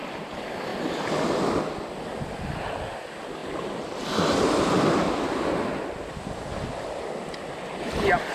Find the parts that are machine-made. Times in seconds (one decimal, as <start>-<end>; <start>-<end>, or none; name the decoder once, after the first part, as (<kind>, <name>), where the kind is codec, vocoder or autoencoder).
none